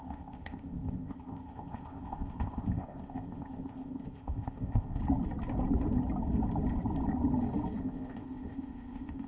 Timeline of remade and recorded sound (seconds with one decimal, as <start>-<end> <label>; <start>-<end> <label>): 0.0-5.0 remade; 5.0-7.8 recorded; 7.8-9.3 remade